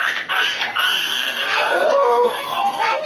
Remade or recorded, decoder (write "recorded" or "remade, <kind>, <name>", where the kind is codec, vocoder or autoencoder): remade, codec, SNAC